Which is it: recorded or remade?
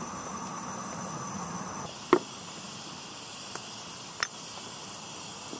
recorded